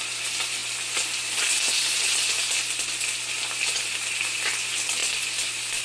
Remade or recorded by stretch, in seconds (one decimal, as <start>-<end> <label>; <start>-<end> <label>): 0.0-5.8 recorded